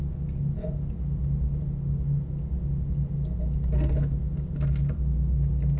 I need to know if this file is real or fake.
real